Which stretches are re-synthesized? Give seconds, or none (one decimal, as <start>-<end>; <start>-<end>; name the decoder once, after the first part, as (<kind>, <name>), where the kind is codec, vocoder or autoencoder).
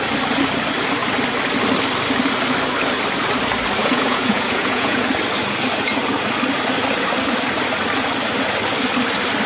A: 3.8-5.1 (vocoder, Vocos)